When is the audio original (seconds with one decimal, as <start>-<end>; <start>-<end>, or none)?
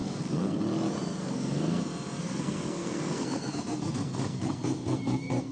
0.6-1.2; 1.8-2.2